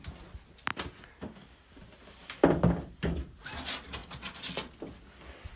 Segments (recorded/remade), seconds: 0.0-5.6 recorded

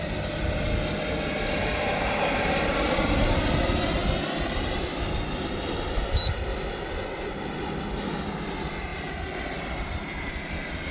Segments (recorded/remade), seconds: 0.0-10.9 recorded

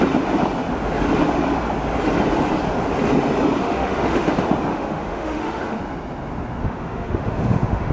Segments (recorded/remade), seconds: 0.0-3.6 recorded; 3.6-4.3 remade; 4.3-4.7 recorded; 4.7-5.8 remade; 5.8-6.6 recorded; 6.6-7.9 remade

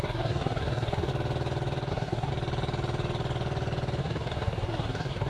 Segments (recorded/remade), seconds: 0.0-1.1 remade; 1.1-1.9 recorded; 1.9-2.3 remade; 2.3-4.0 recorded; 4.0-5.3 remade

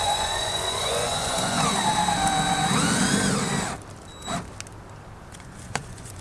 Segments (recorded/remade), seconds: 0.0-1.7 remade; 1.7-5.4 recorded; 5.4-6.2 remade

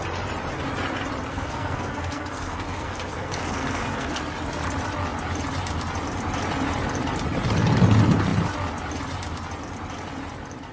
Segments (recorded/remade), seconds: 0.0-1.3 recorded; 1.3-4.2 remade; 4.2-10.7 recorded